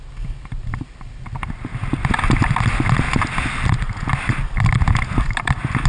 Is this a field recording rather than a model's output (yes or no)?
yes